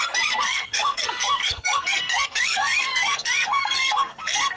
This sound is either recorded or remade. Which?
remade